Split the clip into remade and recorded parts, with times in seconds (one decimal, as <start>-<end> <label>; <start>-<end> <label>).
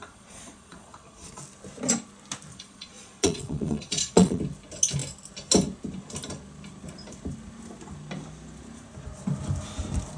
0.0-1.4 remade; 1.4-2.5 recorded; 2.5-4.4 remade; 4.4-10.2 recorded